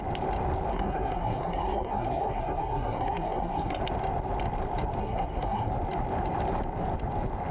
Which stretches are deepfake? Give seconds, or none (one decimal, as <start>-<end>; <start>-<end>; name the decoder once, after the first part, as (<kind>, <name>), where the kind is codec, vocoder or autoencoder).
0.7-3.8 (codec, SNAC); 5.0-5.7